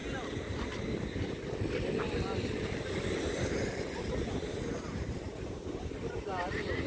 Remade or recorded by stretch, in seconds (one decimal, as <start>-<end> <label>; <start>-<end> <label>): 0.0-4.1 recorded; 4.1-6.9 remade